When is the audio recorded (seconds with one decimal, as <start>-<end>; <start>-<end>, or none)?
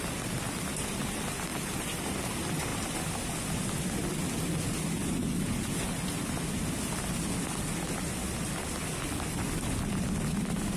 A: 0.0-1.5; 2.2-10.8